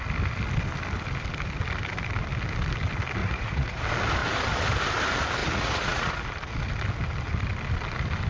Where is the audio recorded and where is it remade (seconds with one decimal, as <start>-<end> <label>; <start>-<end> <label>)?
0.0-3.2 recorded; 3.2-3.8 remade; 3.8-5.4 recorded; 5.4-6.1 remade; 6.1-8.3 recorded